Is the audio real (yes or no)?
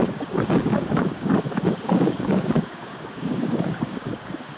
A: no